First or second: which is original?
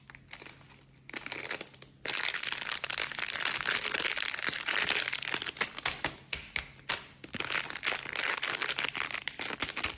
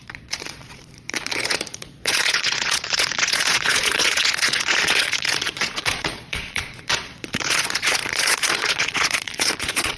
first